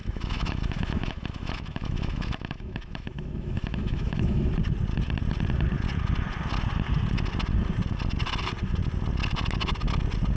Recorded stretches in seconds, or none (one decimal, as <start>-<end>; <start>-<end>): 4.5-10.4